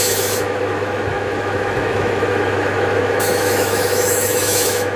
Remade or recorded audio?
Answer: remade